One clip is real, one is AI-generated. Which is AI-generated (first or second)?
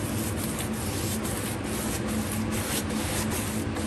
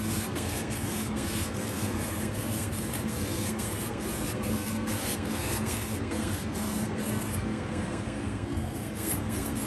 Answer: second